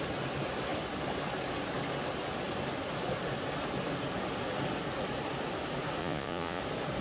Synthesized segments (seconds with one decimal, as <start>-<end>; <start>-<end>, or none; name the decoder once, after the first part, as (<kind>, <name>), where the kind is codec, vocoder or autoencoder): 6.0-6.6 (vocoder, Vocos)